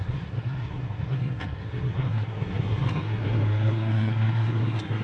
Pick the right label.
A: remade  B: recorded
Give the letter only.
A